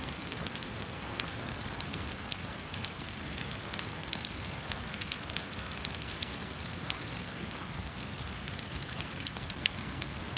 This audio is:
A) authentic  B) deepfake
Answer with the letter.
B